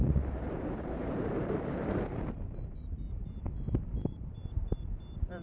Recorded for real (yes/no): no